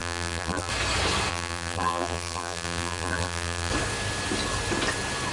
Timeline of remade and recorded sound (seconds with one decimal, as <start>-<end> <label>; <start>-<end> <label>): 0.0-0.7 remade; 0.7-1.3 recorded; 1.3-3.7 remade; 3.7-5.3 recorded